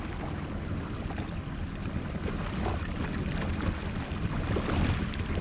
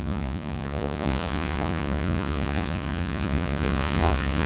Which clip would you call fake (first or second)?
second